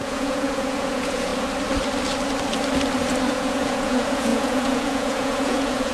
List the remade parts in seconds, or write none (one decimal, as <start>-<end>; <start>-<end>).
0.0-1.3; 3.3-5.9